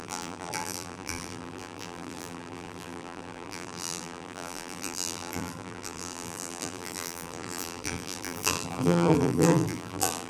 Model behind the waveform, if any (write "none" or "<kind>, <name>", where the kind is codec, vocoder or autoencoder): vocoder, BigVGAN v2